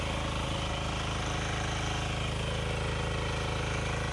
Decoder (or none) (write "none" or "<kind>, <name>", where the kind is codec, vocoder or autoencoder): none